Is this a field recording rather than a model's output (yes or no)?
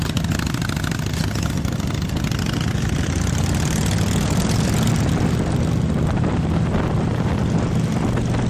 yes